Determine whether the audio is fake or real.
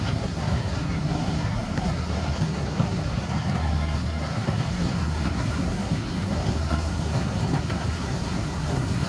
fake